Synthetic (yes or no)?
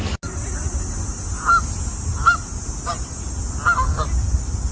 no